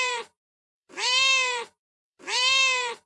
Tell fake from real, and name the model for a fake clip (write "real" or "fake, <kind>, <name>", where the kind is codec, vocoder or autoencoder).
fake, vocoder, BigVGAN v2